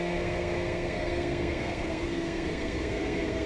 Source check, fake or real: fake